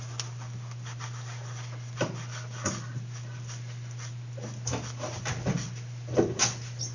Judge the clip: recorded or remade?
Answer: recorded